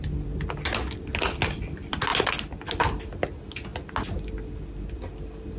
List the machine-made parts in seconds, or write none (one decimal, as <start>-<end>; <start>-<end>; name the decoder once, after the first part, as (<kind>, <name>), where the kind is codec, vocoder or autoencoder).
none